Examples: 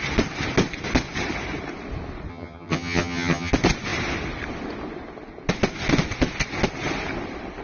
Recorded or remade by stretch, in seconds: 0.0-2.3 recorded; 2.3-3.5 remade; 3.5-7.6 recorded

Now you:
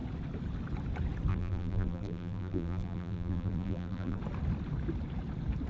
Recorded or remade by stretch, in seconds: 0.0-1.3 recorded; 1.3-4.2 remade; 4.2-5.7 recorded

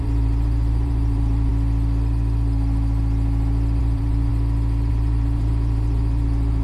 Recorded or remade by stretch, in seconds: 0.0-1.5 remade; 1.5-3.8 recorded; 3.8-4.3 remade; 4.3-4.9 recorded; 4.9-6.6 remade